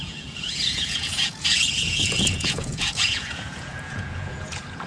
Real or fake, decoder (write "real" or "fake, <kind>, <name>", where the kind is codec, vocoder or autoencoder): fake, vocoder, Vocos